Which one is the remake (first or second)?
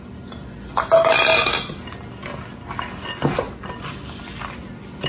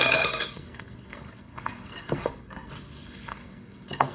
second